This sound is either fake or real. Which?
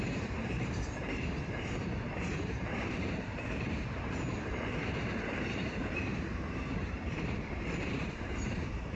fake